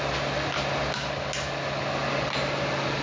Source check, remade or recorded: recorded